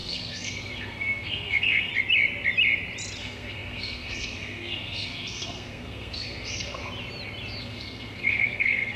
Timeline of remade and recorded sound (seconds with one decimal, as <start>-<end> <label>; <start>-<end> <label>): 0.0-1.9 remade; 1.9-3.2 recorded; 3.2-6.8 remade; 6.8-7.6 recorded; 7.6-9.0 remade